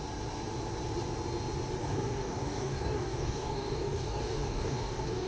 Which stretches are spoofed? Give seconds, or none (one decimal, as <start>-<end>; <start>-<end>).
1.8-5.3

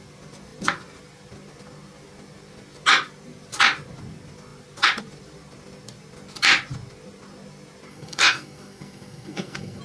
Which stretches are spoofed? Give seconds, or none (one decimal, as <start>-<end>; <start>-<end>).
7.9-9.8

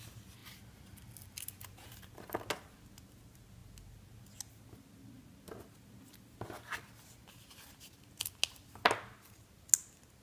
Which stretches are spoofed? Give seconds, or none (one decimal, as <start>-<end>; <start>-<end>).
none

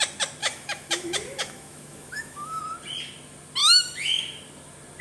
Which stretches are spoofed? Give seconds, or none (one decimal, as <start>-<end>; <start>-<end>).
0.4-2.6; 3.6-4.2